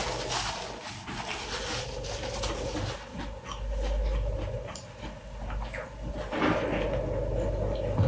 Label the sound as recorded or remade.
recorded